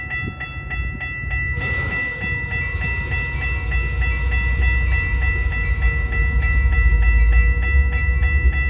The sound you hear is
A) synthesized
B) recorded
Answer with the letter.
B